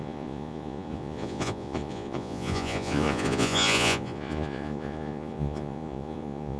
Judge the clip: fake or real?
fake